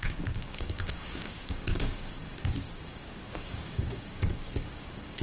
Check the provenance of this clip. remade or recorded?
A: remade